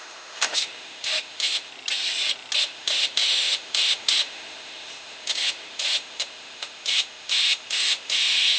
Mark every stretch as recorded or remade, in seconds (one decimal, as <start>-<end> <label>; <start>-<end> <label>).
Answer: 0.0-1.7 remade; 1.7-2.6 recorded; 2.6-8.6 remade